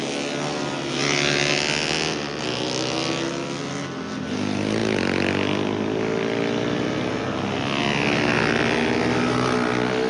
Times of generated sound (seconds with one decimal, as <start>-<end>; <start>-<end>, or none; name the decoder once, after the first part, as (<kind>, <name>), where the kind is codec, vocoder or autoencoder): none